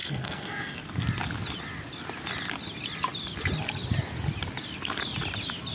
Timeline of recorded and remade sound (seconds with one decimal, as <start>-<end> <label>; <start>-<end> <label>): 0.0-1.0 remade; 1.0-5.7 recorded